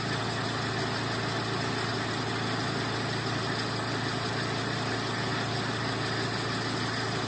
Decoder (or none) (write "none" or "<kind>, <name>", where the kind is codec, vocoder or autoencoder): none